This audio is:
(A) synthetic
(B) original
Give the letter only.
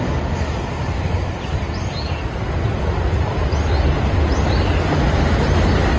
B